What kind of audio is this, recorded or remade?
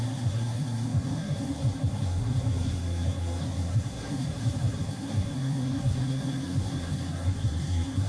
remade